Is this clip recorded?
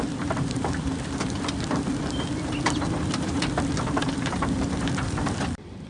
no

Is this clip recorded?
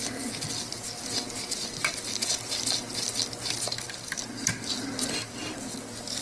yes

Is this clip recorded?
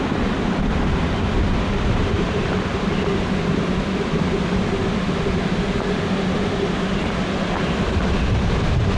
yes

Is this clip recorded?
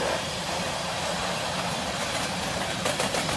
yes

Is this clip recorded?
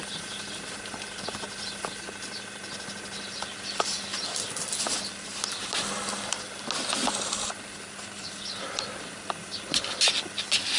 yes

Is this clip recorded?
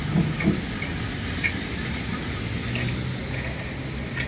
yes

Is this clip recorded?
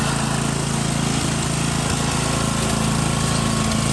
yes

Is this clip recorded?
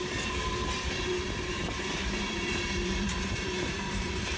no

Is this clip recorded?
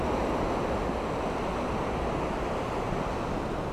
yes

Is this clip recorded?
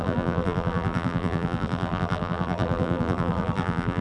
no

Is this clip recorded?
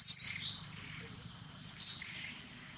no